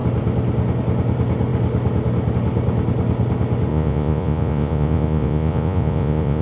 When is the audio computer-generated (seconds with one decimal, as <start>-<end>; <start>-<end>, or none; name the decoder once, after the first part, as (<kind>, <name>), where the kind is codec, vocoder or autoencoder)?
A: 3.7-6.4 (vocoder, Vocos)

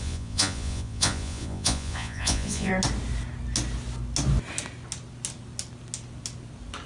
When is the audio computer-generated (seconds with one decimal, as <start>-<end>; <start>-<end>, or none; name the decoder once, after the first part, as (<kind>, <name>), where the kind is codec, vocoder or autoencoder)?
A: 0.0-2.7 (vocoder, Vocos)

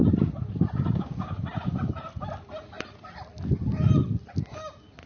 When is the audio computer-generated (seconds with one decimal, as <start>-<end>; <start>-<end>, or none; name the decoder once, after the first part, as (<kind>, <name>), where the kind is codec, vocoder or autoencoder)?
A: none

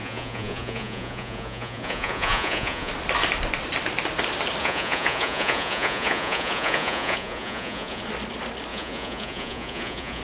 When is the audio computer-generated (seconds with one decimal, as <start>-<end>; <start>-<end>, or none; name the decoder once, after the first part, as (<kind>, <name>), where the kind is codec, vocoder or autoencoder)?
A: 0.0-2.9 (vocoder, Vocos); 4.6-8.0; 8.7-10.2

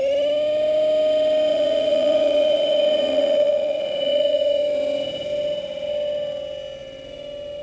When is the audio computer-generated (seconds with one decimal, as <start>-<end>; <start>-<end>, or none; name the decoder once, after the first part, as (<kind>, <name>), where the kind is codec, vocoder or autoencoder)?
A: 1.5-4.6 (vocoder, Vocos)